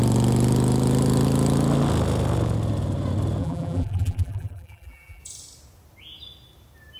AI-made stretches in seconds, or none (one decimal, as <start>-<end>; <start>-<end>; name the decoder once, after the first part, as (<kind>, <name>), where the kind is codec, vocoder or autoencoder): 3.4-5.2 (vocoder, BigVGAN v2)